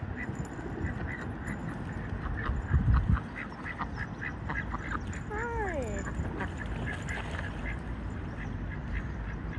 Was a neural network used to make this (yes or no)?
no